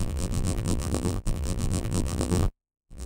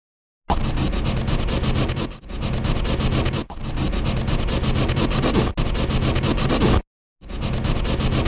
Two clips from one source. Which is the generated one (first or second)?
first